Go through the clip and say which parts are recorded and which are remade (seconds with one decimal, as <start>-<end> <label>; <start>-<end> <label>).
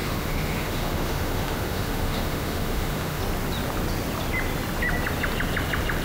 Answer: 0.0-3.2 remade; 3.2-6.0 recorded